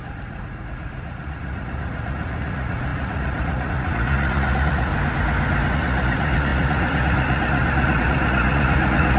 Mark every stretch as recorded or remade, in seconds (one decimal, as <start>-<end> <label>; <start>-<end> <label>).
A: 0.0-4.9 remade; 4.9-5.7 recorded; 5.7-9.2 remade